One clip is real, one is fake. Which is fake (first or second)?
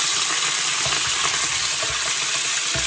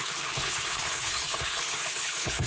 second